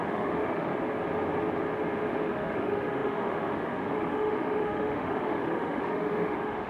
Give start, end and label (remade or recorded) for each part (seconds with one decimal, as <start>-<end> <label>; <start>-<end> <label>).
0.0-0.7 remade; 0.7-2.3 recorded; 2.3-6.7 remade

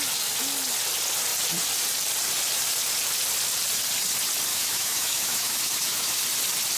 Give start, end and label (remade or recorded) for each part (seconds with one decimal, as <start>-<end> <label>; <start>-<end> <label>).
0.0-4.5 recorded; 4.5-6.2 remade; 6.2-6.8 recorded

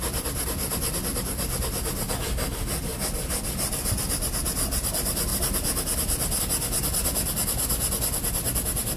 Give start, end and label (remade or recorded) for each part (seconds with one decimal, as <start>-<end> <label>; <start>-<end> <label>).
0.0-9.0 recorded